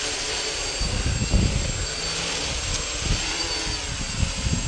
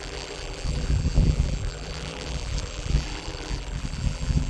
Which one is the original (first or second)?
first